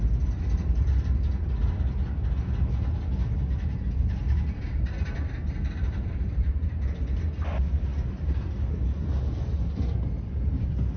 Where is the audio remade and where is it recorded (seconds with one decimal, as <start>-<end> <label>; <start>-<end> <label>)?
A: 0.0-4.2 recorded; 4.2-6.6 remade; 6.6-7.9 recorded; 7.9-8.6 remade; 8.6-11.0 recorded